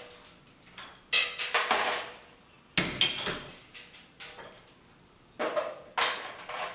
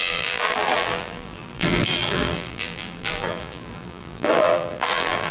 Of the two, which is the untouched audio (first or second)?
first